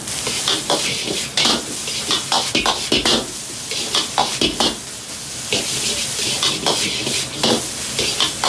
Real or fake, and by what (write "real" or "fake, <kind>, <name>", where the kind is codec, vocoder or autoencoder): real